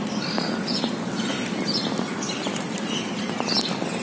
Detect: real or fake real